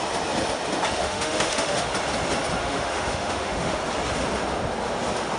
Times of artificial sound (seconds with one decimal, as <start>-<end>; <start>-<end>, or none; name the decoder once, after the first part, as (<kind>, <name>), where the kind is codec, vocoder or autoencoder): 1.0-1.9 (autoencoder, DAC-VAE); 2.6-3.8